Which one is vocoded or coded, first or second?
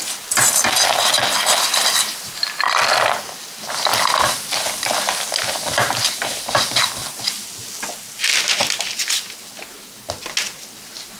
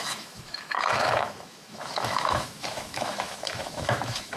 second